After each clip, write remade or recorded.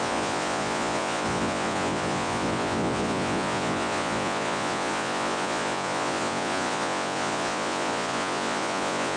remade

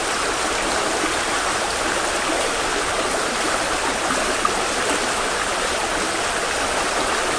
recorded